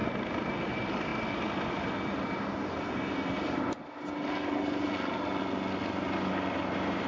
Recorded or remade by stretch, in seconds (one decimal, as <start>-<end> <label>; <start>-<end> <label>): 0.0-7.1 recorded